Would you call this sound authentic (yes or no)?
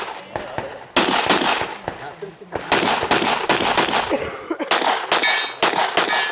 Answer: yes